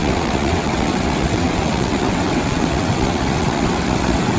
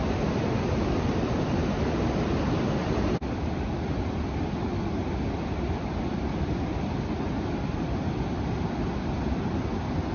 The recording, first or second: second